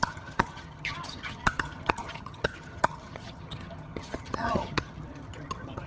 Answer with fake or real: fake